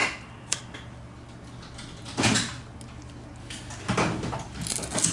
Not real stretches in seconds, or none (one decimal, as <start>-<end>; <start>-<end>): 0.0-0.6